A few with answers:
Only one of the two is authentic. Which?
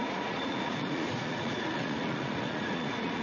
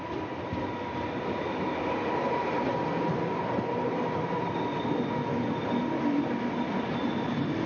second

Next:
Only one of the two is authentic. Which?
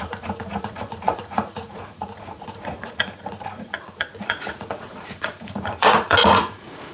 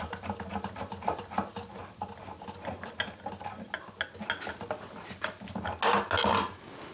second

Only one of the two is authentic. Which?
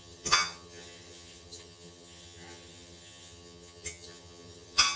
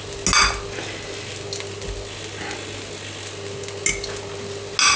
second